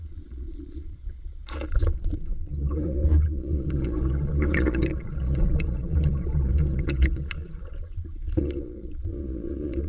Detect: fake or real fake